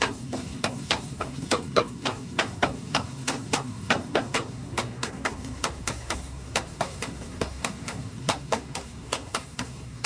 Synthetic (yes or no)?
yes